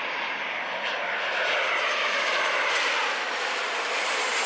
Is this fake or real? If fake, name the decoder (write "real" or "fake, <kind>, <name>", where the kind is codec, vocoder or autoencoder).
real